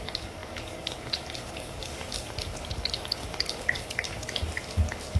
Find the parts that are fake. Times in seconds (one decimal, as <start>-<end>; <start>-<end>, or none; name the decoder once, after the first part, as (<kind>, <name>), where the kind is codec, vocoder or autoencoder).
0.0-5.2 (codec, DAC)